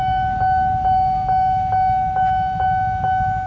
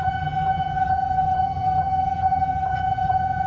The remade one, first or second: second